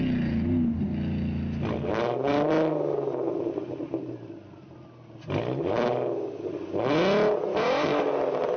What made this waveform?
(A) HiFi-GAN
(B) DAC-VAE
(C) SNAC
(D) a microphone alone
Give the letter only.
D